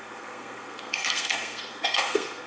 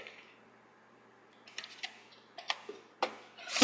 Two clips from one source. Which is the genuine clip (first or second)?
second